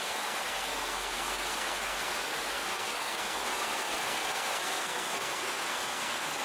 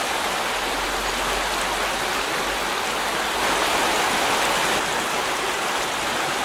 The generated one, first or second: first